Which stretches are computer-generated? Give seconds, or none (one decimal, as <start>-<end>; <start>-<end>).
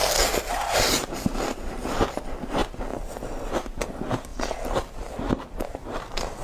0.5-2.6; 3.7-4.3; 4.9-6.4